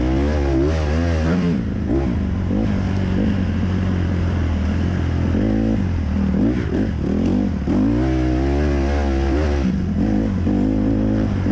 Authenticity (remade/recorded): recorded